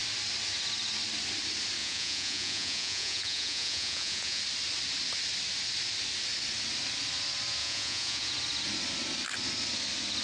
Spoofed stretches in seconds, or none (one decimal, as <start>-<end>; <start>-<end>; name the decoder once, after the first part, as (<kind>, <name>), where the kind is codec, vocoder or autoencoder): 1.8-4.4 (vocoder, Vocos); 7.6-8.3